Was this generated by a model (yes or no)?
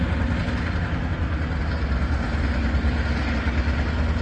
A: no